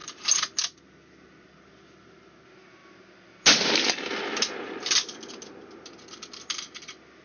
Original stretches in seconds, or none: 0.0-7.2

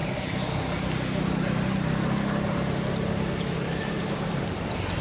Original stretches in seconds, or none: 0.0-5.0

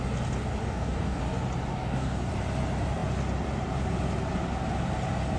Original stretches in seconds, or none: 0.0-0.6; 1.2-1.7; 2.3-5.4

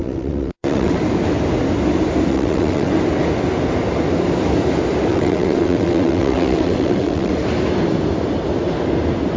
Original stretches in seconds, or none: 1.0-2.3; 2.9-5.1; 7.3-9.4

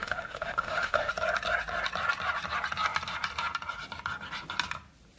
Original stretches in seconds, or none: 1.1-5.2